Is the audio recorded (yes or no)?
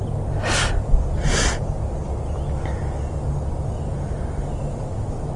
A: yes